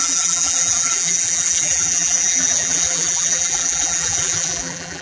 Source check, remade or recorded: remade